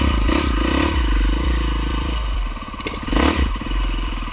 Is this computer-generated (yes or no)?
yes